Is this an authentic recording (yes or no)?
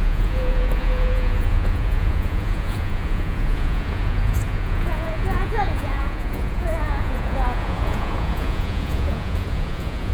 no